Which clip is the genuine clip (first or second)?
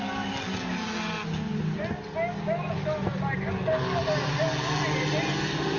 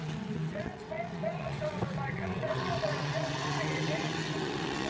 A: first